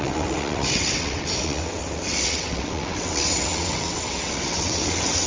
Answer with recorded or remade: remade